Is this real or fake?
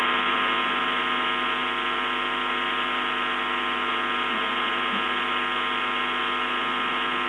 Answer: real